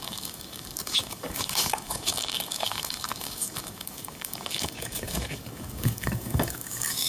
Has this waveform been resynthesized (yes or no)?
yes